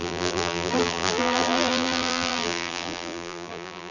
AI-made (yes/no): yes